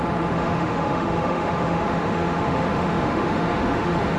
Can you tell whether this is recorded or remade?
remade